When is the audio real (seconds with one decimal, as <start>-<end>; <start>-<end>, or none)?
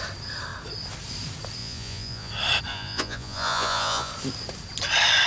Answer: 0.0-1.6; 2.3-2.7; 4.1-5.3